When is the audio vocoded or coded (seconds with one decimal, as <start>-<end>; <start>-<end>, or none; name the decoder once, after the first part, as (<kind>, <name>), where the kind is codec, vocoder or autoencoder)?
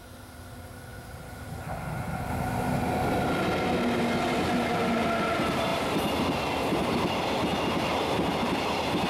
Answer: 0.9-2.3 (vocoder, BigVGAN v2); 8.3-9.1